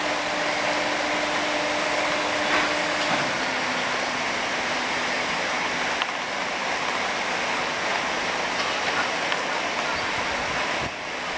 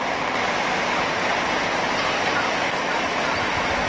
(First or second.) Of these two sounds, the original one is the first